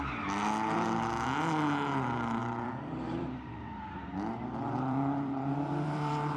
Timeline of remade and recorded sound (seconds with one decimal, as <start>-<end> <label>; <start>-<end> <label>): 0.0-2.4 recorded; 2.4-6.4 remade